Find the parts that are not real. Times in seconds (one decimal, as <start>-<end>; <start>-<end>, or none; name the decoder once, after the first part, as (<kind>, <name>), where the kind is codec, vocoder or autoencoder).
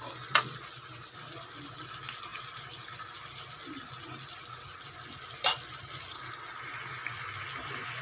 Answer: none